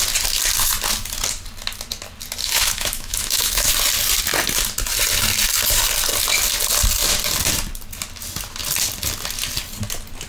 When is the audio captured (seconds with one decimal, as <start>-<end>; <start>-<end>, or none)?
0.0-2.4; 3.7-10.3